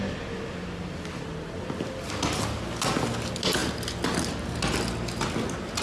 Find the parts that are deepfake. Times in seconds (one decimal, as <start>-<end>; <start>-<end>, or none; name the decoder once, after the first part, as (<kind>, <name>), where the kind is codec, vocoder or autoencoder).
none